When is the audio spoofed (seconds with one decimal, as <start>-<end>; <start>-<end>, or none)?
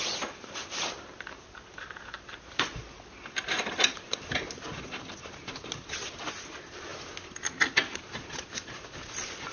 none